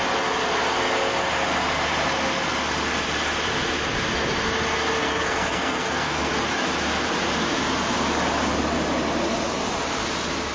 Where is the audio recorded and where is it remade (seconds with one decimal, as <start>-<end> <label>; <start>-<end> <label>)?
0.0-5.0 recorded; 5.0-6.3 remade; 6.3-10.5 recorded